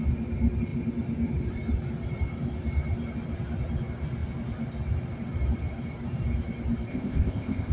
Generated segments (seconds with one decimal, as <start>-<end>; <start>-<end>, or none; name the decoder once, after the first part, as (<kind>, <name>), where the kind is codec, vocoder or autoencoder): 6.9-7.7 (codec, ZipCodec)